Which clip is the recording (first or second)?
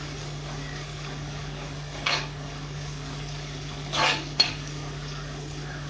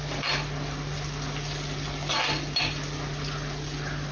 second